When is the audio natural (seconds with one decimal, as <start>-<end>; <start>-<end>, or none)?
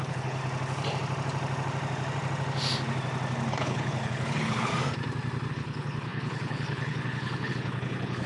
0.4-3.5; 4.7-5.5